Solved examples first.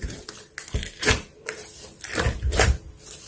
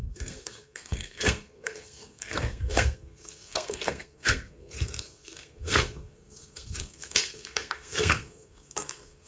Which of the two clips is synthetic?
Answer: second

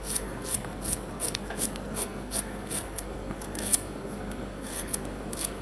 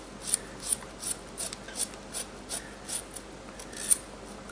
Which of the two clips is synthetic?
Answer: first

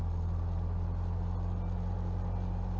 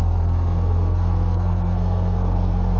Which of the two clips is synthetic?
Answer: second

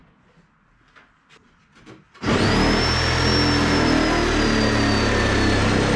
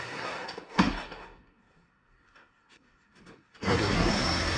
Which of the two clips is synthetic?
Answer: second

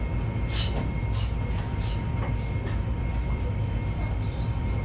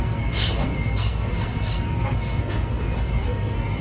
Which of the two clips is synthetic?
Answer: second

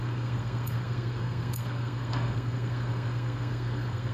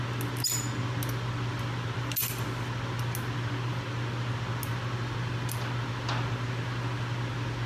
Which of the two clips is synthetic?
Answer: first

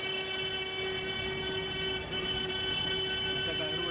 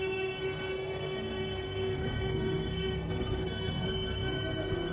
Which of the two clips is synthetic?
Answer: second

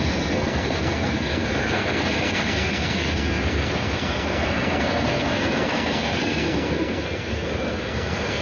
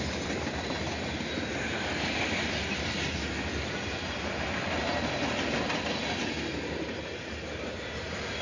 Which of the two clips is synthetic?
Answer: first